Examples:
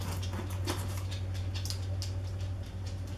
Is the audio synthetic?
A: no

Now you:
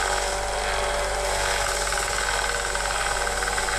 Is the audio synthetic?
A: no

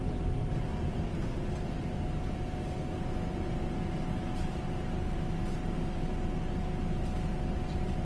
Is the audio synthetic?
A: no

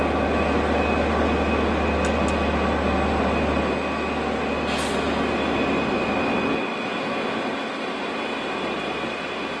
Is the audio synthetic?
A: no